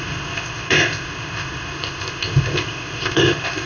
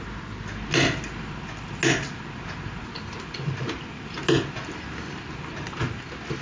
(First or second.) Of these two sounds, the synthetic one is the first